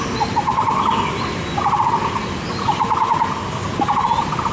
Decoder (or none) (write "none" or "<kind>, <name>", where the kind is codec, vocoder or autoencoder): none